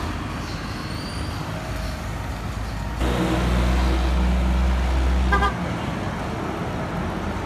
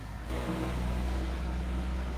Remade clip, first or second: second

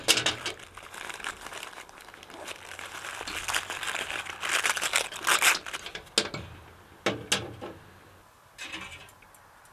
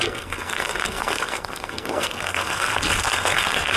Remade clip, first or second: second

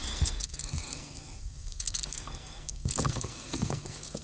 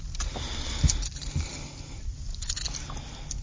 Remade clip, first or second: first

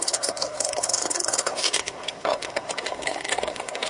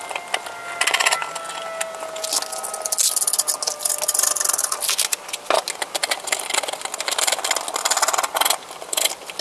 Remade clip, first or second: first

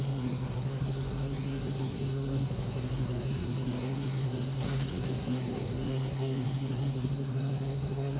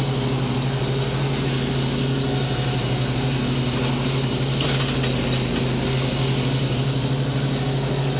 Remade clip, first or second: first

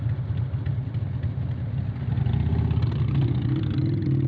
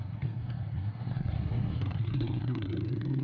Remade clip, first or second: second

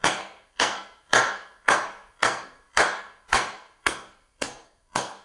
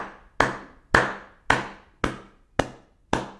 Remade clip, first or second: first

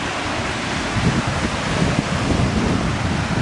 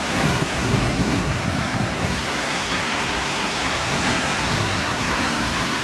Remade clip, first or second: second